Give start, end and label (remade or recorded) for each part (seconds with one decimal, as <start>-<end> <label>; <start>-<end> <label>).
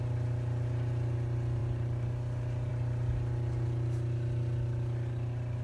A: 0.0-5.6 recorded